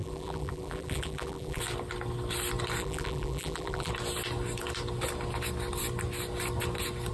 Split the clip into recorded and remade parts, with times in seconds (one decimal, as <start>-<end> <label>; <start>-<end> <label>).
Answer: 0.0-1.6 remade; 1.6-2.8 recorded; 2.8-3.9 remade; 3.9-7.1 recorded